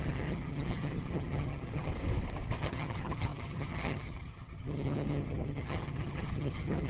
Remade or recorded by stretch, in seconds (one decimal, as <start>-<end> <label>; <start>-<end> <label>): 0.0-1.9 remade; 1.9-2.6 recorded; 2.6-6.9 remade